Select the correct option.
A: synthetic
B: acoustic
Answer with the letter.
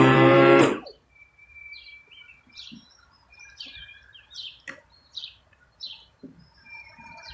A